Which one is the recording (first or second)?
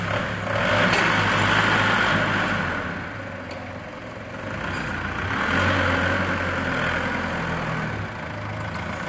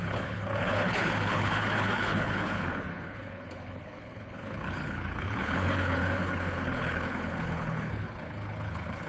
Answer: first